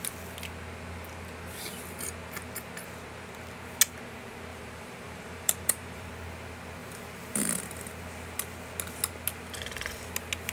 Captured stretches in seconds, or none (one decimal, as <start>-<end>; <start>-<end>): 0.0-4.5; 6.1-6.8; 7.6-10.5